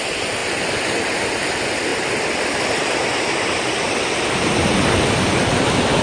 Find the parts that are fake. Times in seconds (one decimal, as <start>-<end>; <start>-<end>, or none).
none